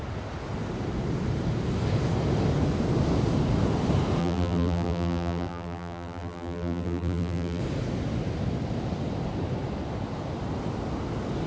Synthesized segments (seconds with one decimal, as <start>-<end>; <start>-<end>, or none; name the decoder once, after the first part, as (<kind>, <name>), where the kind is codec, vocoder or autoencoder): 4.2-7.6 (vocoder, BigVGAN v2)